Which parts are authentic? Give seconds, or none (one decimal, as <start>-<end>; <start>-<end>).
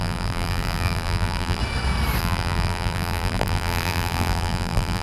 1.6-2.2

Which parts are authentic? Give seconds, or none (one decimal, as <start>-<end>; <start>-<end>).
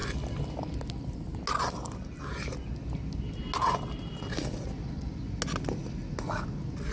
0.0-6.9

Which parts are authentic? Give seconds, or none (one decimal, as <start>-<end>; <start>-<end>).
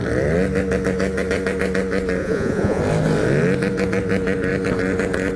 0.0-2.2; 2.8-5.4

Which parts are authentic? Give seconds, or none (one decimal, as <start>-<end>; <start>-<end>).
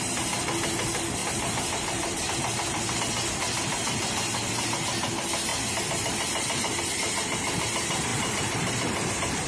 0.0-1.2; 2.9-8.1; 9.1-9.5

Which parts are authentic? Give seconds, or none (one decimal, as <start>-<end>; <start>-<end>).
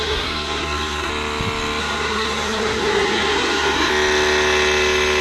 1.1-1.8; 3.9-5.2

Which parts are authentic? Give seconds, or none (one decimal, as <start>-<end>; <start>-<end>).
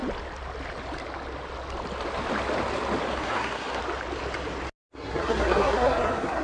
0.0-3.2; 3.8-4.9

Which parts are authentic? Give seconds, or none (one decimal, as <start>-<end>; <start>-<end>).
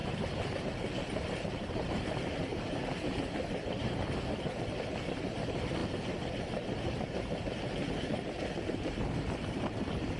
none